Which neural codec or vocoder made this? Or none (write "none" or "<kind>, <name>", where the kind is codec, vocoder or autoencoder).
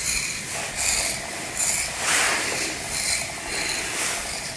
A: none